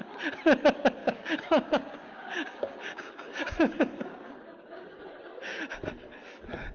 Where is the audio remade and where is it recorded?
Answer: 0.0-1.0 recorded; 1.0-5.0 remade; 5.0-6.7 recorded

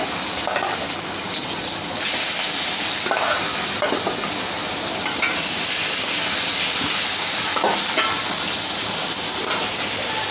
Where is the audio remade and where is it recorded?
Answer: 0.0-10.3 recorded

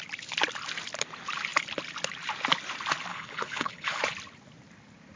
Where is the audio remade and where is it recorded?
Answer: 0.0-3.1 recorded; 3.1-4.0 remade; 4.0-5.2 recorded

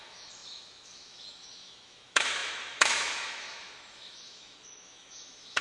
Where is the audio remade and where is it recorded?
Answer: 0.0-5.6 remade